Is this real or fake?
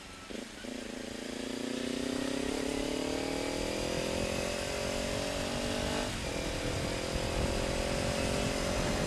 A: real